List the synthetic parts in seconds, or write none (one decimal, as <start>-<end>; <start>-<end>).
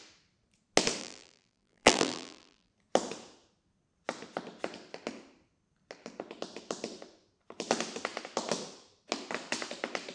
1.0-2.7